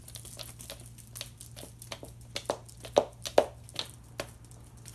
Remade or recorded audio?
recorded